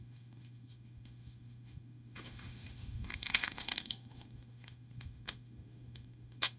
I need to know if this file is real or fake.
fake